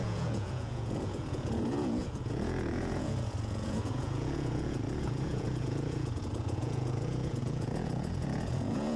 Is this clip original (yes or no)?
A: no